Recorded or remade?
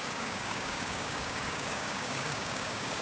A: remade